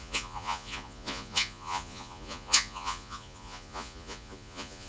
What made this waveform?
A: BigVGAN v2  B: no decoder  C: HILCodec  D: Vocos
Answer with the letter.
D